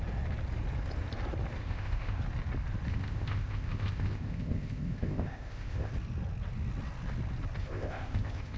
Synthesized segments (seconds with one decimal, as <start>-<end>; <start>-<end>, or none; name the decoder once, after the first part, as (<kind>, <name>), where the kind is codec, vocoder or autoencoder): 1.6-2.2 (codec, ZipCodec); 2.9-5.9; 7.6-8.6